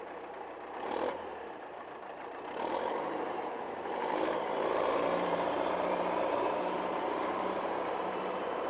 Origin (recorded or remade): remade